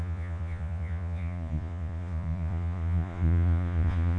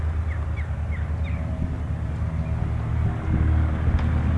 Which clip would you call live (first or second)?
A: second